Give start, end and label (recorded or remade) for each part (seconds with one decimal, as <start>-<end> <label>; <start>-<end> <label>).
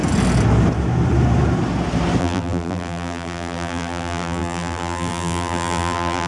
0.0-2.2 recorded; 2.2-6.3 remade